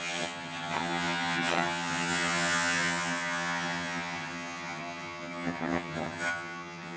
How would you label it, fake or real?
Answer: fake